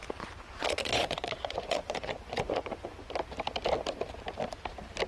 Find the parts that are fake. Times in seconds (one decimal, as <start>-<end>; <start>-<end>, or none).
0.0-3.1